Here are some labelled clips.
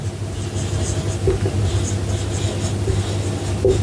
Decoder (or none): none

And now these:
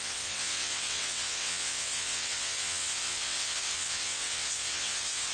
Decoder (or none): vocoder, WaveNeXt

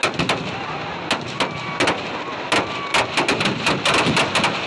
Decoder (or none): none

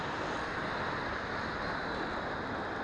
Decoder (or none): none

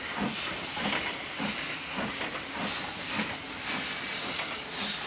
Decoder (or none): none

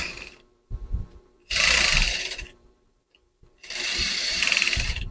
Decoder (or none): vocoder, BigVGAN v2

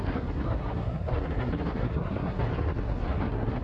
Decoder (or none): codec, SNAC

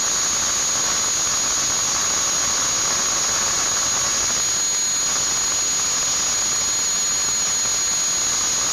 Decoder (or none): none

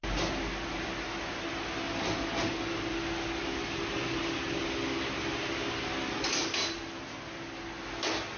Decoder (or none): none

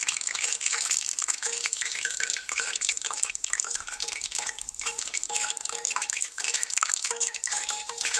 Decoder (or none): autoencoder, DAC-VAE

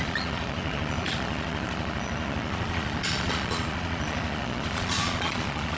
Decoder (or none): vocoder, Vocos